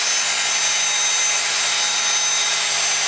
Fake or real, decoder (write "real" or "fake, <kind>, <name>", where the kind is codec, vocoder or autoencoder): real